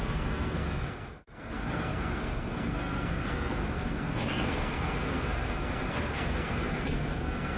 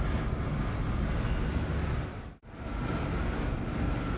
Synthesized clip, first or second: first